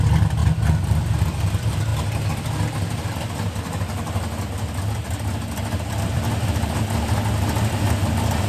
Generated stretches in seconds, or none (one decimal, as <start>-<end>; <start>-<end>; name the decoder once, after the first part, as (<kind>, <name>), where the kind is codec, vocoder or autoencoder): none